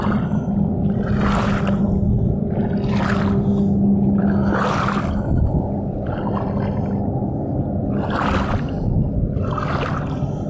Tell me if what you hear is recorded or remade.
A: recorded